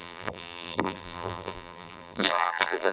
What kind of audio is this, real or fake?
fake